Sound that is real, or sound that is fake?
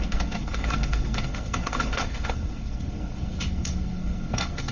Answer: fake